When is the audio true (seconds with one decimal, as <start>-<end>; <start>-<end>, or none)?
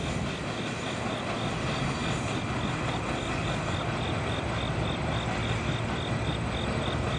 0.0-7.2